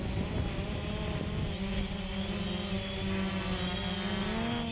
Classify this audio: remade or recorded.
recorded